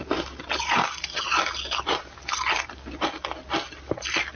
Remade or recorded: recorded